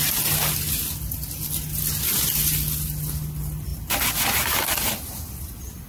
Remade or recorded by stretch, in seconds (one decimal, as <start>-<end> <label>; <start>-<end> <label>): 0.0-5.9 recorded